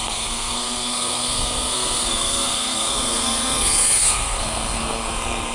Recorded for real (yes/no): no